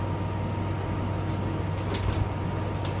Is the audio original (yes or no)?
yes